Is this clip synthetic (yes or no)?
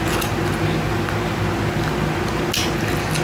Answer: no